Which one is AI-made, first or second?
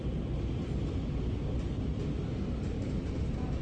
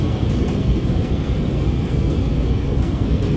second